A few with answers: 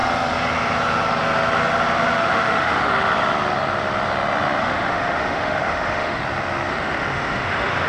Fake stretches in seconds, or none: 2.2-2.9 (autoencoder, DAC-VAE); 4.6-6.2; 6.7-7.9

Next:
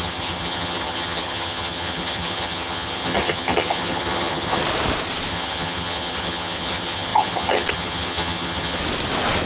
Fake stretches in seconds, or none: 0.0-4.6 (vocoder, HiFi-GAN); 5.3-8.8